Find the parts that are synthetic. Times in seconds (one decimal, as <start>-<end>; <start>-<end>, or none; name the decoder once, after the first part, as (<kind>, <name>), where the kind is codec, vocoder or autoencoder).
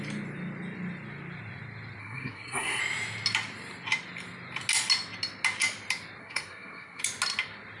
2.0-2.8 (codec, SNAC); 6.2-7.0